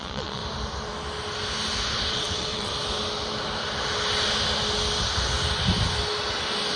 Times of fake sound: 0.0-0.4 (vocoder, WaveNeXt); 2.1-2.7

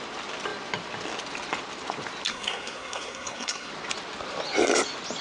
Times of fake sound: 2.3-3.7 (codec, SNAC)

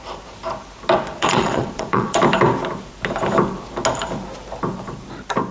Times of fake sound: 1.1-2.2 (vocoder, Vocos)

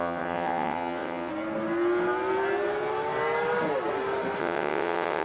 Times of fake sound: 0.0-1.3 (vocoder, WaveNeXt); 4.4-5.2

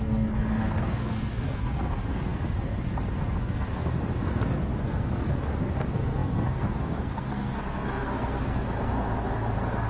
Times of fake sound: 0.0-9.9 (codec, SNAC)

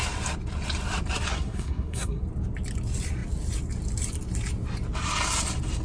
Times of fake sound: 1.3-2.2 (codec, SNAC)

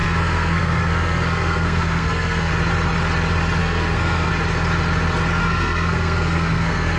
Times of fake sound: 0.0-2.5 (codec, SNAC); 3.6-4.3; 5.4-7.0